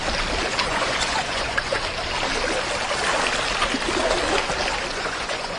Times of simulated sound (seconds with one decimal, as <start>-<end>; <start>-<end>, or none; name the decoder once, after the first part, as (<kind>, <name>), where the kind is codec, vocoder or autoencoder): 0.6-1.8 (vocoder, Vocos); 4.9-5.6

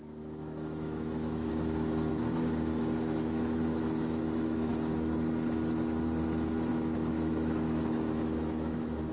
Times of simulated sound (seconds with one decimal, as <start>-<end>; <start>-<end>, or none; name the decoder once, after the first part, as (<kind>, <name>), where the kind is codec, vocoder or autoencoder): 0.0-1.5 (autoencoder, DAC-VAE); 2.1-4.7; 6.7-9.1